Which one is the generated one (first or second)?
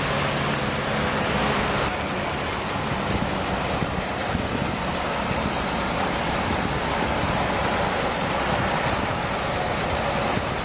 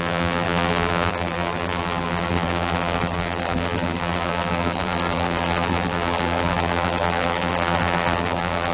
second